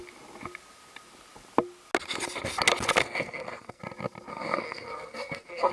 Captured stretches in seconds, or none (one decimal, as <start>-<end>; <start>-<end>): 0.0-3.0; 3.8-4.3